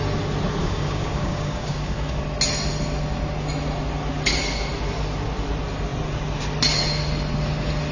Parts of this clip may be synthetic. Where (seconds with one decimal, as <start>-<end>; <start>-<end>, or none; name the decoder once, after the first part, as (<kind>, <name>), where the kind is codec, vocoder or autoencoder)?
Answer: 0.6-2.2 (codec, DAC)